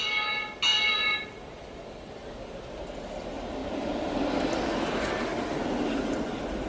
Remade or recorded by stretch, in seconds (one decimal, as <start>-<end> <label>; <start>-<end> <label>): 0.0-0.7 recorded; 0.7-2.3 remade; 2.3-3.6 recorded; 3.6-4.3 remade; 4.3-5.3 recorded; 5.3-5.9 remade; 5.9-6.7 recorded